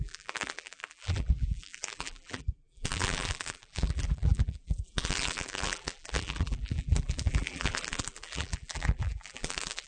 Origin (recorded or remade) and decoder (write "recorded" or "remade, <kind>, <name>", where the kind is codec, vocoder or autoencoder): remade, vocoder, BigVGAN v2